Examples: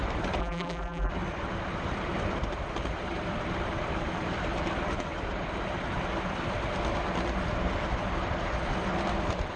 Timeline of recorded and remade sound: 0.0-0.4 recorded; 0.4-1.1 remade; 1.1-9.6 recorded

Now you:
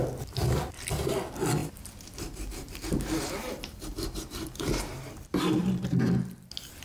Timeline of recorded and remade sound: 0.0-1.6 recorded; 1.6-5.4 remade; 5.4-6.8 recorded